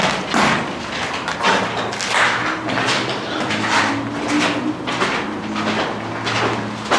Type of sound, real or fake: real